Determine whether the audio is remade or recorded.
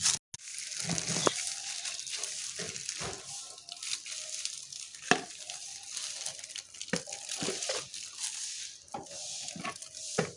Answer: recorded